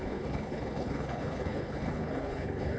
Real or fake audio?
fake